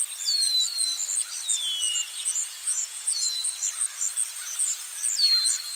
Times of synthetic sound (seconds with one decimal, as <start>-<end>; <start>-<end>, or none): 1.9-3.5; 4.4-5.0